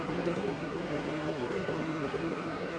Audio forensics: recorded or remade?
remade